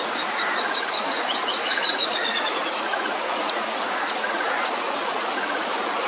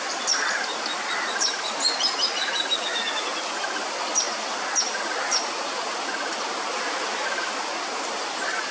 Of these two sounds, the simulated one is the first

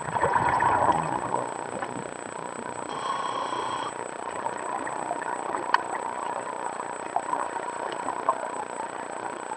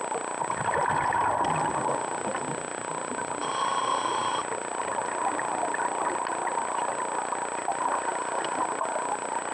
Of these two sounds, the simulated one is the first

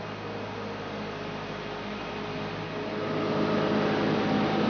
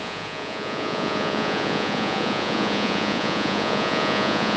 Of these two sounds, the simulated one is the second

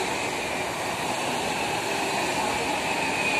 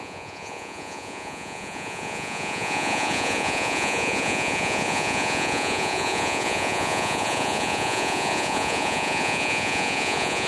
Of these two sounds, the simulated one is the second